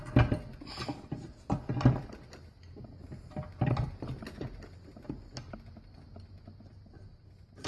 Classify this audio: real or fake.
real